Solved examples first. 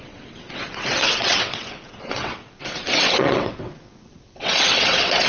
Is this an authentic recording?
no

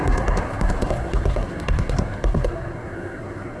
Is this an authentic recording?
no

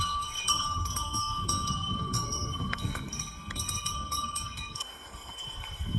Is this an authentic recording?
no